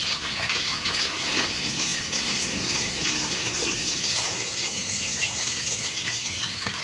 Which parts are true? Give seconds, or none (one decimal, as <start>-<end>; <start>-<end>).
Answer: none